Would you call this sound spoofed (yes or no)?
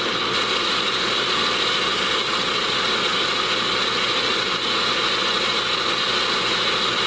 no